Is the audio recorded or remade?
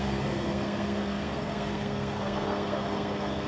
remade